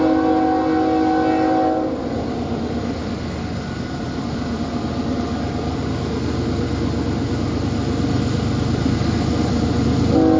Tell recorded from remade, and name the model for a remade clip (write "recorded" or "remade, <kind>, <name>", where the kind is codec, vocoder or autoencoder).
recorded